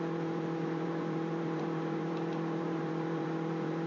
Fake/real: fake